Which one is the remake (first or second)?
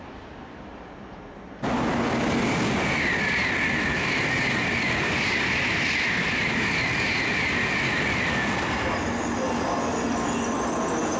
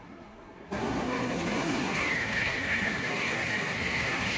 second